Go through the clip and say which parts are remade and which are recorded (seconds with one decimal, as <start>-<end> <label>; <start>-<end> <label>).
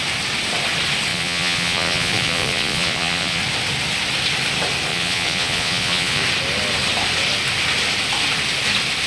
0.0-1.1 recorded; 1.1-3.4 remade; 3.4-4.9 recorded; 4.9-6.2 remade; 6.2-9.1 recorded